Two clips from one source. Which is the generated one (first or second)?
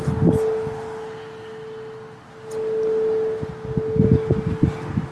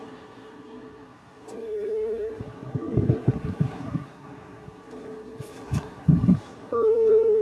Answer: second